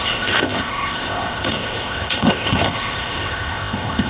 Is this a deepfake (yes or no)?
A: yes